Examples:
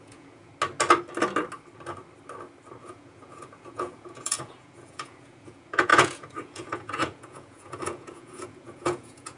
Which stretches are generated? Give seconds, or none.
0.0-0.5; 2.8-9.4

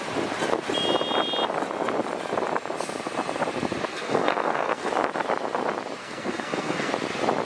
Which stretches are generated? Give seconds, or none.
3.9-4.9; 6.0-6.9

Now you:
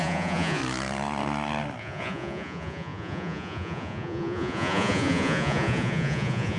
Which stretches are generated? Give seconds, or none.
0.0-0.6; 1.8-6.6